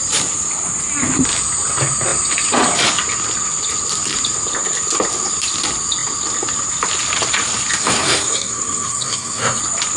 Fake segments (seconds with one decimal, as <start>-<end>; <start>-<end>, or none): 7.8-9.6

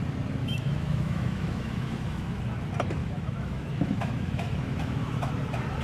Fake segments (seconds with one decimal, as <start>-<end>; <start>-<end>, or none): 0.4-2.4; 3.0-5.3

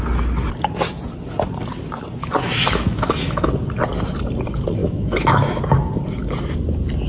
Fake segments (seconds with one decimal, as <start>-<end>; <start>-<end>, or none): 2.4-3.5; 4.8-5.6

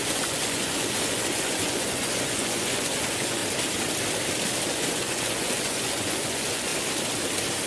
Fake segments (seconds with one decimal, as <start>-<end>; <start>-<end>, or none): 0.0-3.4; 4.7-6.7

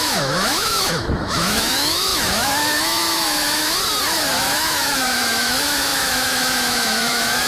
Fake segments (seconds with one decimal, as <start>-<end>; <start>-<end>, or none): 0.0-3.6; 4.4-7.5